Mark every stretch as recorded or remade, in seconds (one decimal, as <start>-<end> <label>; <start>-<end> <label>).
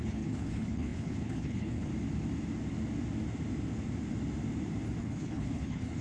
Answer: 0.0-1.9 remade; 1.9-5.0 recorded; 5.0-6.0 remade